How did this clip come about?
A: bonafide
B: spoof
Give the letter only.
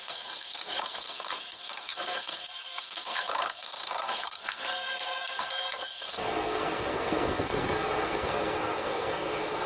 B